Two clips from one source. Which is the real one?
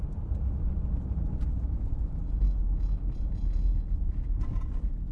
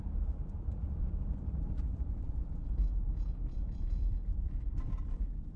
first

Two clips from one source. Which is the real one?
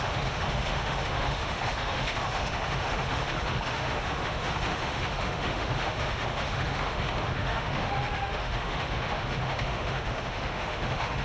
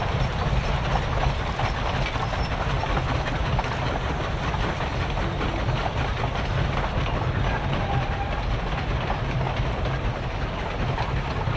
second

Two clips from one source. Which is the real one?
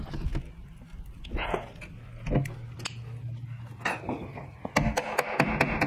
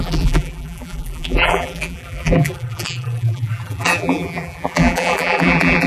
first